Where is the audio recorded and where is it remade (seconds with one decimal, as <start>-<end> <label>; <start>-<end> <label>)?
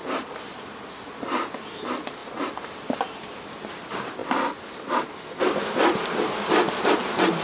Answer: 0.0-7.4 recorded